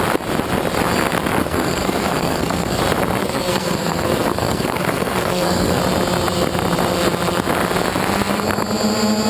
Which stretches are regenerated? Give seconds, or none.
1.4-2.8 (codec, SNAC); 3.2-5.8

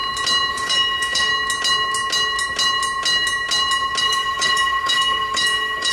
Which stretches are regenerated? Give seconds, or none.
0.5-1.3 (codec, DAC); 4.0-5.9

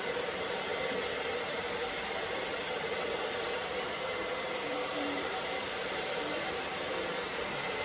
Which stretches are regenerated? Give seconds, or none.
0.0-0.7 (vocoder, BigVGAN v2); 1.5-7.8